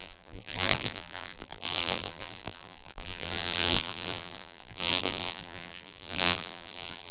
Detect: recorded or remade remade